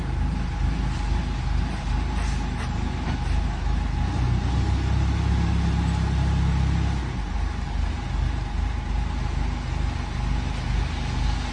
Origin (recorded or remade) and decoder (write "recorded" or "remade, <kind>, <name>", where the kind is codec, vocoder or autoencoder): recorded